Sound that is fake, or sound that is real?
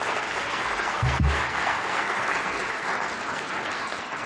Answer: fake